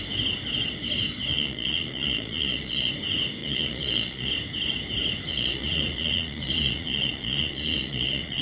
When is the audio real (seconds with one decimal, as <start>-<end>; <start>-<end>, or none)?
0.0-1.3; 2.9-3.4; 4.3-5.3